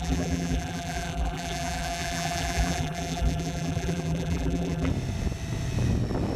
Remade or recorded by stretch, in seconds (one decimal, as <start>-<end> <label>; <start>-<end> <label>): 0.0-4.9 remade; 4.9-6.4 recorded